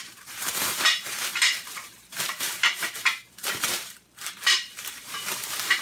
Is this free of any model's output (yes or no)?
no